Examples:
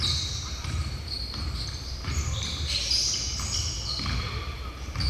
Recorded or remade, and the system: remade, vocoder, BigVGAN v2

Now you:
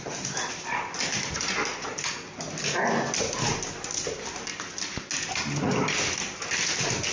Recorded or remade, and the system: recorded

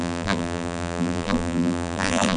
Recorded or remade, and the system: remade, vocoder, BigVGAN v2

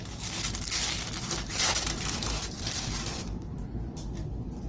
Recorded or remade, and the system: remade, vocoder, BigVGAN v2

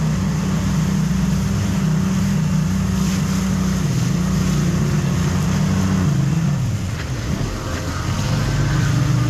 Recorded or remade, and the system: recorded